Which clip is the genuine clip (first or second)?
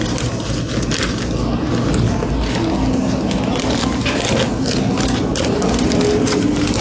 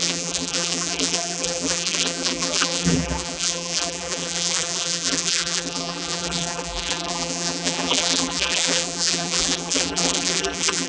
first